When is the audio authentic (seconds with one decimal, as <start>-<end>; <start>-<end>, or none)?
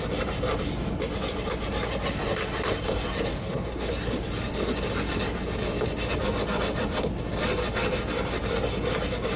0.0-3.4; 3.9-9.4